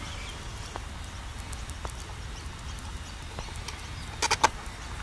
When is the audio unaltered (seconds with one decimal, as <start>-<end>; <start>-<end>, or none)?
0.0-5.0